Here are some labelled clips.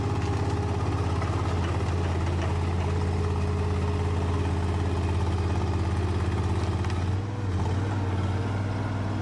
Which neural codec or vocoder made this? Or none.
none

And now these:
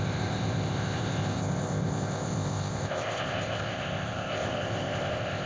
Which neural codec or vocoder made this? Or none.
codec, ZipCodec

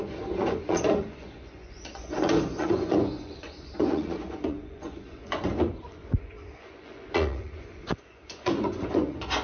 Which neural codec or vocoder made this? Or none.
vocoder, Vocos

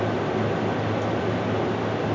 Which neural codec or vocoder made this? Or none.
none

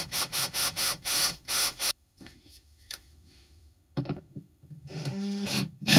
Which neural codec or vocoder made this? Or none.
autoencoder, DAC-VAE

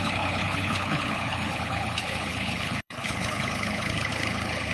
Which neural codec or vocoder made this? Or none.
codec, HILCodec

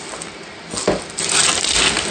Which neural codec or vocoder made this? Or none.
none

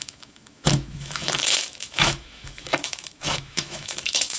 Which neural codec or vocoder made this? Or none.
autoencoder, DAC-VAE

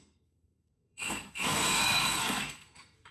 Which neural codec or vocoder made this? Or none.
codec, SNAC